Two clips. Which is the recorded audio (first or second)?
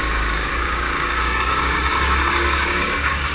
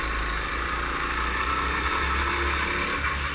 second